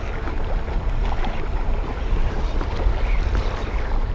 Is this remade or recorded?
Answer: recorded